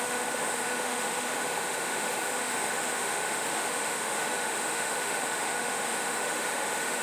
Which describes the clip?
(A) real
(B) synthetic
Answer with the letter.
B